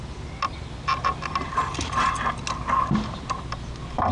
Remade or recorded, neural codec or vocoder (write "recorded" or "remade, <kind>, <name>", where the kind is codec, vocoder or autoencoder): recorded